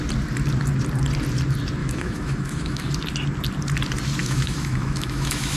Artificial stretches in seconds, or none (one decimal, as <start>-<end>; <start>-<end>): 1.8-2.9; 4.2-5.6